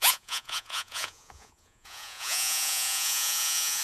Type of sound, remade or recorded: remade